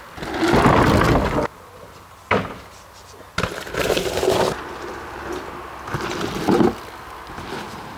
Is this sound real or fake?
real